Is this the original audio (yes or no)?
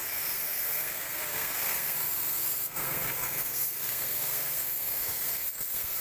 no